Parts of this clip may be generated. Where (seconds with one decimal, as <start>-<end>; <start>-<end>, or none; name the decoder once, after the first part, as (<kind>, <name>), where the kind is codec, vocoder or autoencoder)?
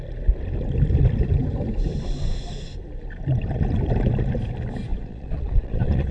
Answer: 4.9-6.1 (vocoder, Vocos)